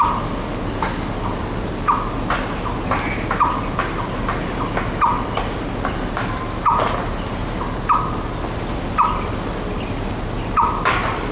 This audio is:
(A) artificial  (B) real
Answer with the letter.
B